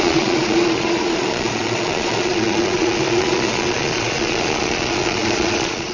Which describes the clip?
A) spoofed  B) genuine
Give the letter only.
A